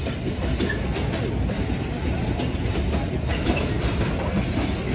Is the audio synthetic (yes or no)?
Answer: no